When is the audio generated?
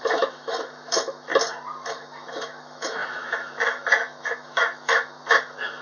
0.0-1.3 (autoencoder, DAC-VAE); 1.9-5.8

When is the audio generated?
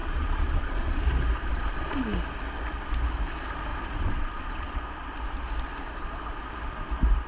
0.0-1.0 (vocoder, Vocos); 1.5-2.0; 3.7-4.8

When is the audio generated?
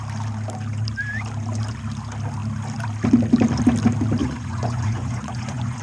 4.2-5.8 (vocoder, Vocos)